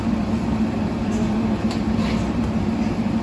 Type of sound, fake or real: fake